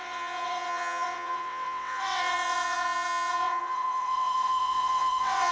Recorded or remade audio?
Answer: remade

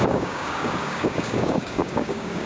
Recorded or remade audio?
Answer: remade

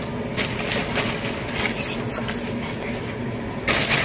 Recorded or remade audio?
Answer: recorded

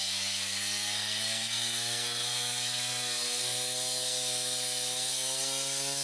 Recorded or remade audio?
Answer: remade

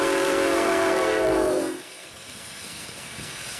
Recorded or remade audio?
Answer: remade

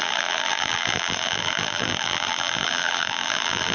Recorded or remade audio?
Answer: remade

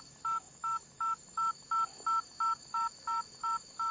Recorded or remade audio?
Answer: remade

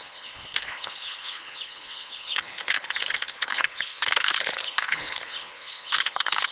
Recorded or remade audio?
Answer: remade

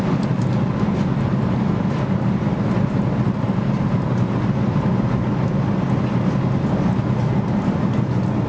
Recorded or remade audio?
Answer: recorded